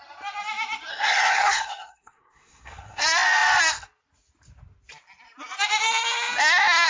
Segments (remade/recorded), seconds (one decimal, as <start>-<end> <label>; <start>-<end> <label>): 0.0-0.9 recorded; 0.9-3.0 remade; 3.0-6.9 recorded